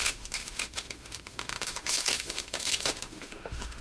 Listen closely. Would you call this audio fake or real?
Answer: fake